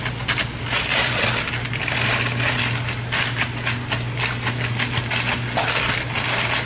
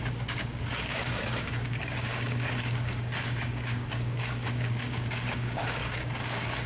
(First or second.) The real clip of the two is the first